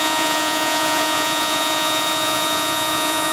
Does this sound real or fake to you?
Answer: fake